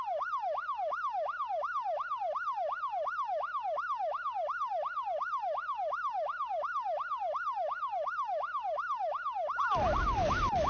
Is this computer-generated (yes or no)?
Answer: no